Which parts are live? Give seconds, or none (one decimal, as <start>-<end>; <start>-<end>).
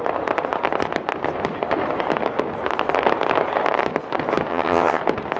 0.0-4.5; 5.0-5.4